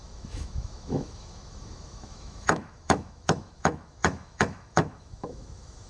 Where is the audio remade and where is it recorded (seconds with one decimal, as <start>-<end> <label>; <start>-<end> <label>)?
0.0-5.9 remade